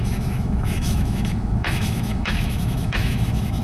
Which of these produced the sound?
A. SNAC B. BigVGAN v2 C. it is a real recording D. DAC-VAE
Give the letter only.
D